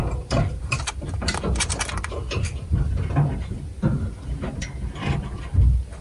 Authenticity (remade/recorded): recorded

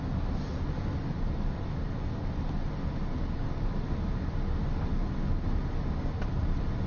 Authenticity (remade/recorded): recorded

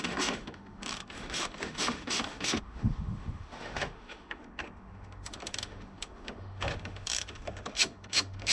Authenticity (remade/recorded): remade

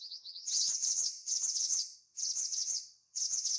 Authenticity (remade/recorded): remade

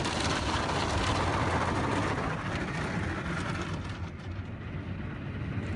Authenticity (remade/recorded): recorded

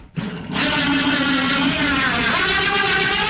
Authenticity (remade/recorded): remade